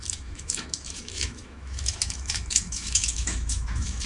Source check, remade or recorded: remade